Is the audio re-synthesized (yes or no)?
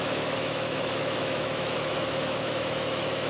yes